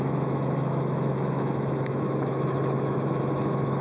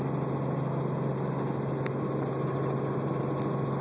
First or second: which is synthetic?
first